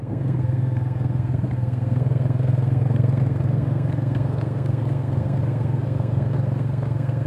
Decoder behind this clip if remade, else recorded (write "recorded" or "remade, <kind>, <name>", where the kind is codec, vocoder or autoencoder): remade, codec, SNAC